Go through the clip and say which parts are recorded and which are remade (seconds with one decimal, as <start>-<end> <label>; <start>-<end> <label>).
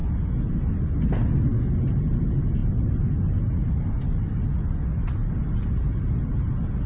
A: 0.0-2.6 recorded; 2.6-6.0 remade; 6.0-6.9 recorded